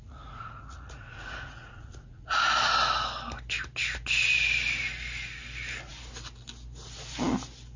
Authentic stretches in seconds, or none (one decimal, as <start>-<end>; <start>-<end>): 2.4-7.8